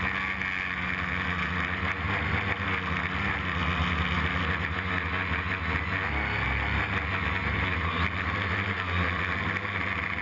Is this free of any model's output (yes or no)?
yes